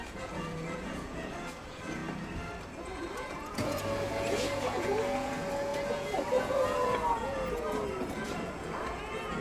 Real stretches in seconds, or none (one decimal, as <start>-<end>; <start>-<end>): 2.0-2.8